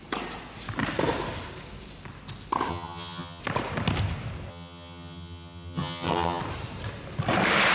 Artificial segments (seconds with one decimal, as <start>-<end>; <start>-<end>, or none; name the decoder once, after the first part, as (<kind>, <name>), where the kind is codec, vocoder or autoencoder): 2.7-3.4 (vocoder, HiFi-GAN); 4.5-6.4

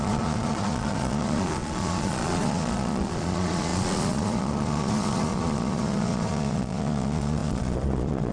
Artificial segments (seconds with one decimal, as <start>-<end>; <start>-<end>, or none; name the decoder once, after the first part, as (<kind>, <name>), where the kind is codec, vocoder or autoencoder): 0.0-8.3 (vocoder, Vocos)